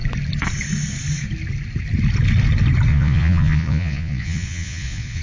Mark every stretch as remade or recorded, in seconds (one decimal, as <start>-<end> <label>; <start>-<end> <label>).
0.0-2.9 recorded; 2.9-5.2 remade

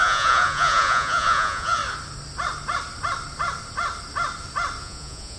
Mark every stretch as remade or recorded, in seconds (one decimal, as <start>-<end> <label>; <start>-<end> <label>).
0.0-1.8 remade; 1.8-4.8 recorded; 4.8-5.4 remade

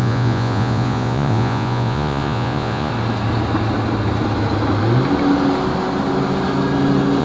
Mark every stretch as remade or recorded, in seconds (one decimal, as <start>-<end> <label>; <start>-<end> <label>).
0.0-2.9 remade; 2.9-7.2 recorded